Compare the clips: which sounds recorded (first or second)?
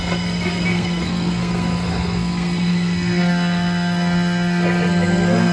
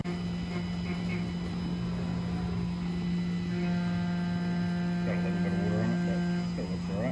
second